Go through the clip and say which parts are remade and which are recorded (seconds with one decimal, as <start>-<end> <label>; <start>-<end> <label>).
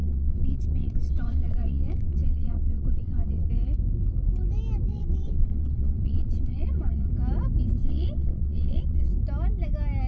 0.0-3.5 remade; 3.5-4.9 recorded; 4.9-7.1 remade; 7.1-7.8 recorded; 7.8-9.1 remade; 9.1-10.1 recorded